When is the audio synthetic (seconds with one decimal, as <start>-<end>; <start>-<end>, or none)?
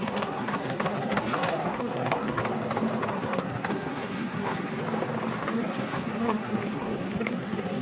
0.0-2.4; 3.1-4.7; 5.4-7.8